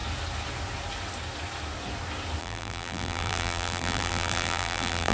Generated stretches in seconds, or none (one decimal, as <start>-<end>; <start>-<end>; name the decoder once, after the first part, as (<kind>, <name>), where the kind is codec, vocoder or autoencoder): 2.4-5.1 (vocoder, BigVGAN v2)